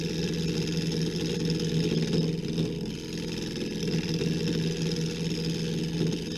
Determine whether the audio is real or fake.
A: real